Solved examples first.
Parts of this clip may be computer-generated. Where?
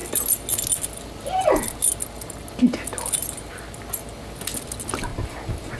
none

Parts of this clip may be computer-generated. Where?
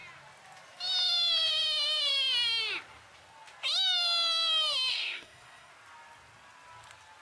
4.9-5.7 (codec, SNAC)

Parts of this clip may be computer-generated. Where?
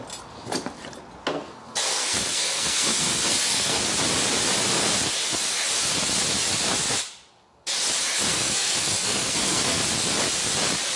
1.3-3.8 (codec, SNAC); 8.3-9.8